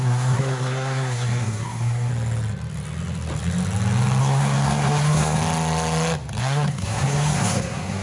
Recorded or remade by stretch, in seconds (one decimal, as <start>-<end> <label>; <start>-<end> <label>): 0.0-2.1 remade; 2.1-4.2 recorded; 4.2-5.4 remade; 5.4-6.4 recorded; 6.4-8.0 remade